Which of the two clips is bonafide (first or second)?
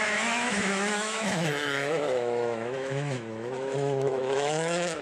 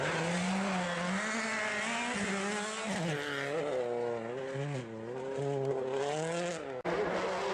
second